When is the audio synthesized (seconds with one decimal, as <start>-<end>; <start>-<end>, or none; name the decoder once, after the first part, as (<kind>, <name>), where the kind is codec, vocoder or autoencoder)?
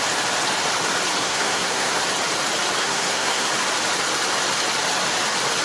1.2-2.0 (codec, SNAC); 2.8-3.5